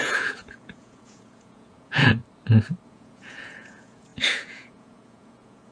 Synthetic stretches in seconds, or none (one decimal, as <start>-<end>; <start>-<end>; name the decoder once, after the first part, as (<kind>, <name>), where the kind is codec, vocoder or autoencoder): 0.0-2.2 (vocoder, Vocos); 2.9-5.7